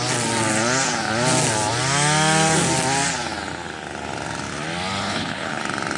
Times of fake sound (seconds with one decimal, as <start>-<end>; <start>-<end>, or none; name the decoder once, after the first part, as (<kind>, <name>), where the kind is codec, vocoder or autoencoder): 5.0-5.6 (codec, HILCodec)